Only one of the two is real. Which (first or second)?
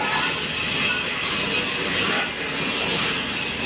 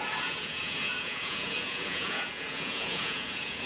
first